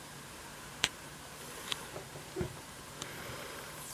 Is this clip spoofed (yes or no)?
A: yes